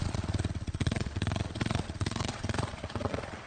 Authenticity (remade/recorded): remade